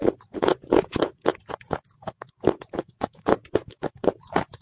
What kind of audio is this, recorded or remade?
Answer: remade